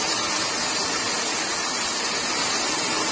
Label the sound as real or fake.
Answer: real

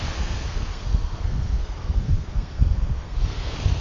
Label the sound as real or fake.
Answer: fake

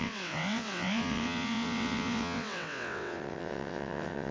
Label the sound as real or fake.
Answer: fake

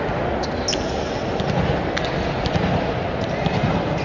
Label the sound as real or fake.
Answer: real